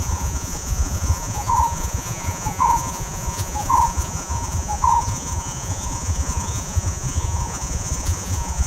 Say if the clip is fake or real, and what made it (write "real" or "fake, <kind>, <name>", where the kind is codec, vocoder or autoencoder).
fake, vocoder, Vocos